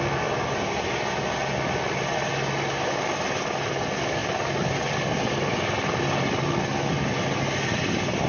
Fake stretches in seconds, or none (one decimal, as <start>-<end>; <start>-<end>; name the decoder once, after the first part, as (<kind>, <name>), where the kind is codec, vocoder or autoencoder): none